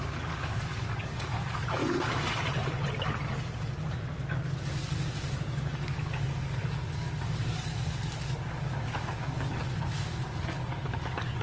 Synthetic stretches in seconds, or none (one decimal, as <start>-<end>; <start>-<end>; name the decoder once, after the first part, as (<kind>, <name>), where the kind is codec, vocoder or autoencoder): 0.0-1.8 (codec, DAC); 4.6-11.4